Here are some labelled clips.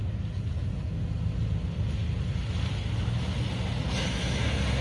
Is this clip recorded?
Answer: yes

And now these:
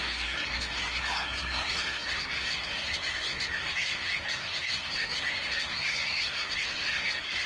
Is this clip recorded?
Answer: no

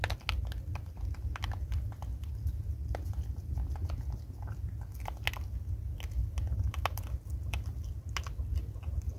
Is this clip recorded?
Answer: yes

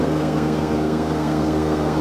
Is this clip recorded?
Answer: no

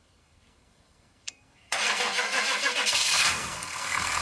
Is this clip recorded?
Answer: no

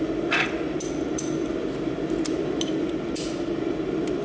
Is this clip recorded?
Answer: yes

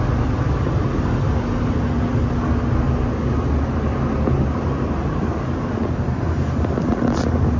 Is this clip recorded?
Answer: yes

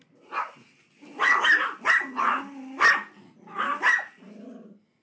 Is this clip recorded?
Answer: yes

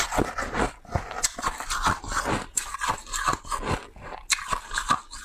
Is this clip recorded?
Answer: yes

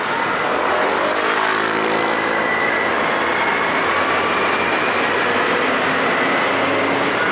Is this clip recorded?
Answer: yes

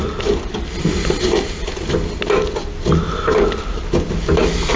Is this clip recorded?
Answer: yes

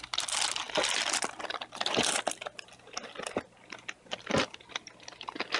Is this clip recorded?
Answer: yes